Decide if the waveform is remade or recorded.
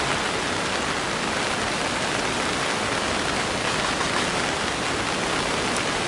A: recorded